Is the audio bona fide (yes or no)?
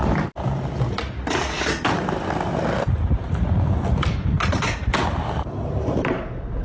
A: yes